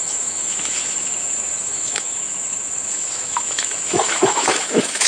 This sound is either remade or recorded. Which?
remade